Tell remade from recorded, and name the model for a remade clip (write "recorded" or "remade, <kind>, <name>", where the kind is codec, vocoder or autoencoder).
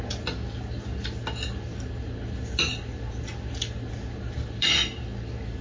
recorded